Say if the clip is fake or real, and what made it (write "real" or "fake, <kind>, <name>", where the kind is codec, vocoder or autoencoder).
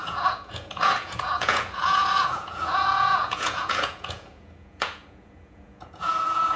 fake, vocoder, Vocos